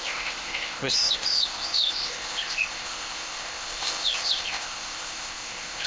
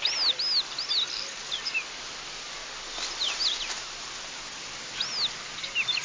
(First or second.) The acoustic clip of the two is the second